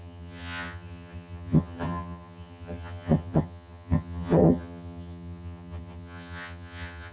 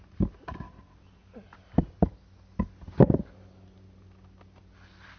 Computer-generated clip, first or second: first